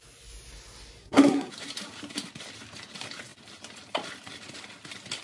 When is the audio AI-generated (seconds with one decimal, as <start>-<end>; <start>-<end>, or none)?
1.0-1.5